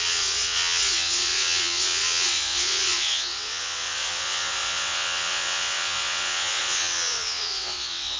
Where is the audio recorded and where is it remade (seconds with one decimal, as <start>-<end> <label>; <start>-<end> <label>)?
0.0-8.2 remade